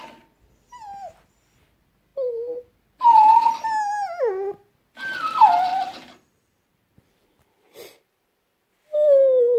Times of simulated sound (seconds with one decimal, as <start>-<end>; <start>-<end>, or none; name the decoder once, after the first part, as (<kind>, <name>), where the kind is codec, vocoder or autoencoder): 5.7-8.7 (vocoder, BigVGAN v2)